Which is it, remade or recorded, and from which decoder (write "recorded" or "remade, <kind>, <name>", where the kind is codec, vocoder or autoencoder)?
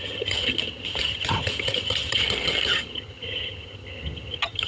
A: remade, vocoder, HiFi-GAN